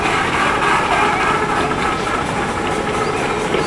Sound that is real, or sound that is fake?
real